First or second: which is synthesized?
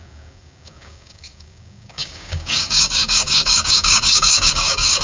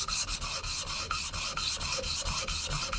first